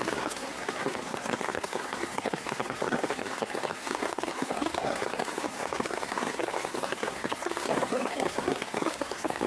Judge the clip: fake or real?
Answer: fake